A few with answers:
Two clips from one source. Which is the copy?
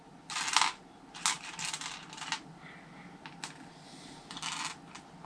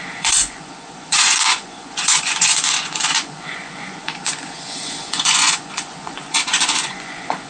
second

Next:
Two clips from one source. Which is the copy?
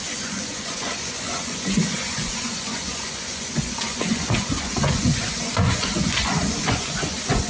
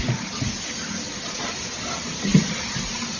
first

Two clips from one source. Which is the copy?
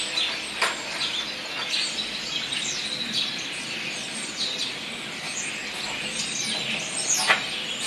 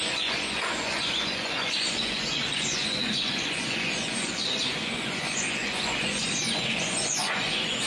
second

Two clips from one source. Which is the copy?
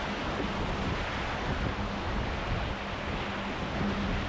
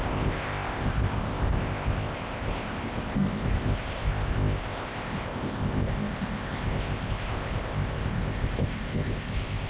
second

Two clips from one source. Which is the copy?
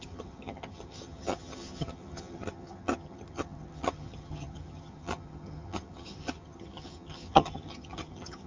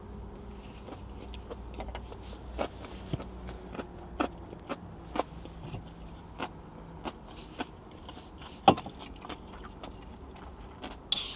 first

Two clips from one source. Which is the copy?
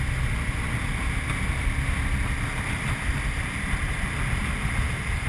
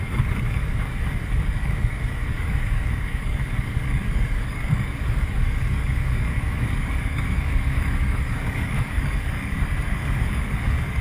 second